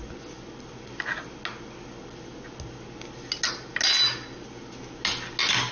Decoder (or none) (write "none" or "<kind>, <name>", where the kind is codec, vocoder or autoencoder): none